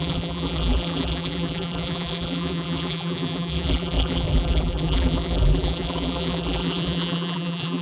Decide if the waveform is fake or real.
fake